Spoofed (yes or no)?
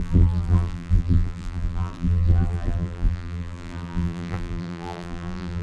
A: yes